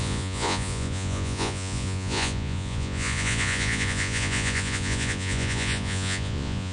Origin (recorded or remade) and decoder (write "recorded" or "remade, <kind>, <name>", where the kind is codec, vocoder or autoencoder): remade, vocoder, Vocos